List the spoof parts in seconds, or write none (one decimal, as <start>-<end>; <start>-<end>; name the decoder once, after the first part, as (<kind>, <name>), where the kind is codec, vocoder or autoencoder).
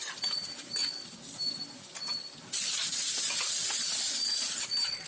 none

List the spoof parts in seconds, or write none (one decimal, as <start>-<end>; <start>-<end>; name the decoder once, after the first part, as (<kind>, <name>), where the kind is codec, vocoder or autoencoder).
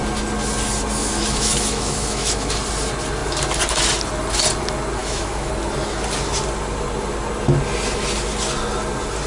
1.0-2.5 (autoencoder, DAC-VAE); 5.0-5.5